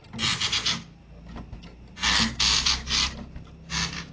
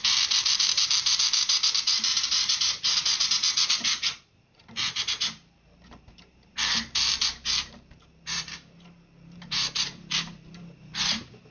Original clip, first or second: first